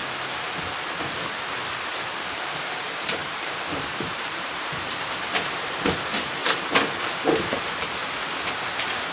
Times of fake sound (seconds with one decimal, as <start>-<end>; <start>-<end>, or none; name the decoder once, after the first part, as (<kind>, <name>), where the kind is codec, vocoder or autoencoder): 2.3-6.4 (vocoder, BigVGAN v2); 7.0-8.0; 8.5-9.1